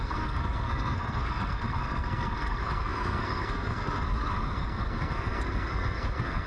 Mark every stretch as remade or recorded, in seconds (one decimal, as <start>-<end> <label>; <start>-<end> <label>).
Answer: 0.0-6.5 remade